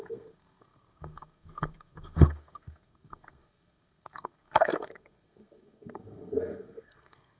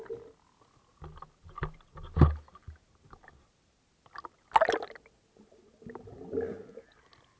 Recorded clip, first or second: second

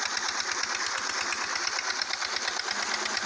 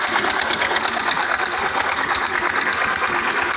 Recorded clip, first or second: first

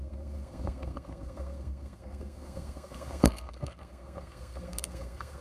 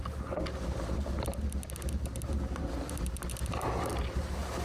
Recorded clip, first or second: second